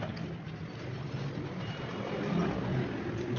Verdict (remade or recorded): recorded